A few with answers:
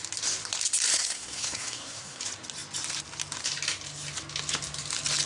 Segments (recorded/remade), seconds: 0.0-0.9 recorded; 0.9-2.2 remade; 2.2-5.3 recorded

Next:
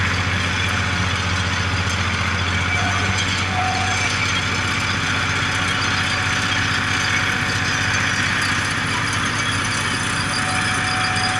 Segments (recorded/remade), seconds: 0.0-2.8 recorded; 2.8-4.2 remade; 4.2-11.4 recorded